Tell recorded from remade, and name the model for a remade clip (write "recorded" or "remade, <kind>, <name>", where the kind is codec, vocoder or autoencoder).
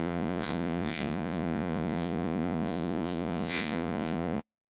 remade, vocoder, Vocos